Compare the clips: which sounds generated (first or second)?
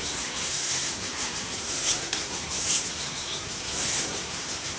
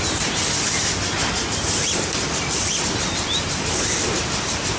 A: first